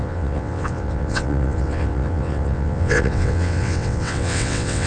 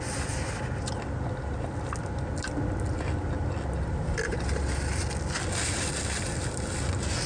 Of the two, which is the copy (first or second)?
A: first